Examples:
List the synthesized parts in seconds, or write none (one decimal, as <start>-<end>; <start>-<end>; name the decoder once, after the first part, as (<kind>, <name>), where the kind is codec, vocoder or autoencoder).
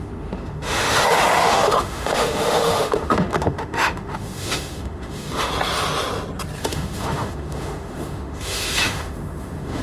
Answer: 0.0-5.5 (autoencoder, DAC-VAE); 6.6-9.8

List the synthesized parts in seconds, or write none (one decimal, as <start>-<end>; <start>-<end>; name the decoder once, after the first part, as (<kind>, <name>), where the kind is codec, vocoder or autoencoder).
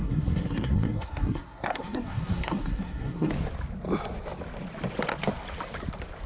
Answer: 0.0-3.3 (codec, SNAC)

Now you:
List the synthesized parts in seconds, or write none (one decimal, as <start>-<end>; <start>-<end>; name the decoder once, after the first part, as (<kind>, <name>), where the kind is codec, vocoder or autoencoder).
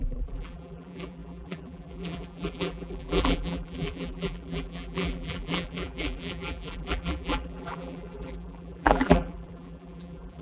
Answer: 0.0-10.4 (vocoder, BigVGAN v2)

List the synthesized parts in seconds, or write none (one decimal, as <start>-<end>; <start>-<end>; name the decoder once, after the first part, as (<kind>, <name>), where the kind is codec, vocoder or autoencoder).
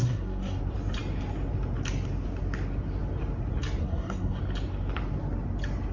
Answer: 0.0-0.6 (codec, SNAC); 3.8-4.4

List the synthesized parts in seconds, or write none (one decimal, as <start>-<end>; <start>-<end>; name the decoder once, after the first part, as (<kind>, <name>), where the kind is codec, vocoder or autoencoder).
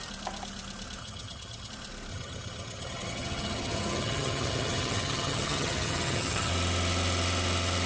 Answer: 1.0-1.7 (vocoder, HiFi-GAN); 2.1-6.5